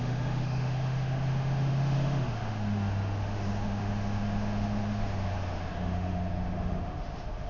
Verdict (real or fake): fake